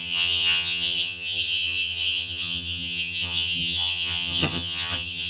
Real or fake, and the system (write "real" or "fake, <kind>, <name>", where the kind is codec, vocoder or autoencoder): fake, vocoder, HiFi-GAN